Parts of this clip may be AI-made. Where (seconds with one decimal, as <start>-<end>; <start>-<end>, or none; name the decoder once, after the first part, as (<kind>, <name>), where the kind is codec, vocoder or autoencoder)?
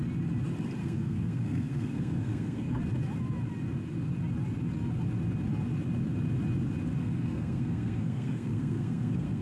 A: 0.8-2.8 (codec, SNAC); 7.0-9.4